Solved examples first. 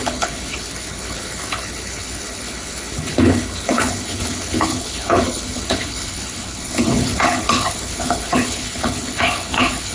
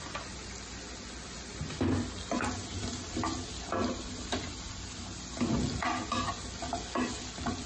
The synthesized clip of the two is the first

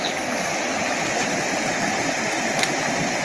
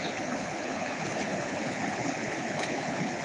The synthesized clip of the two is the second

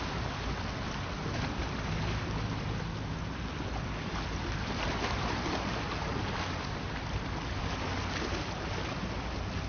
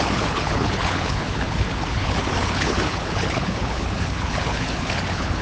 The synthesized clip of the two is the second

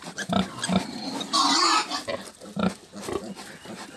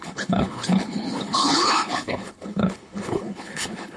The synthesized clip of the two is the second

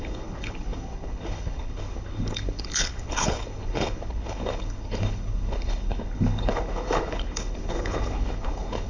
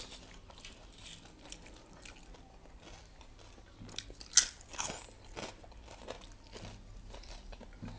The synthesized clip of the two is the first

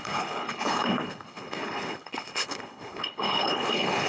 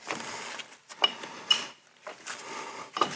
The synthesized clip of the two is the first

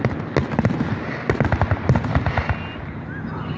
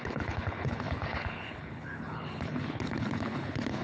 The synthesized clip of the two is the second